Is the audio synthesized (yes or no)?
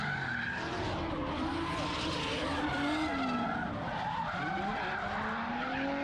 no